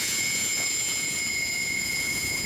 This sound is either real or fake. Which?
fake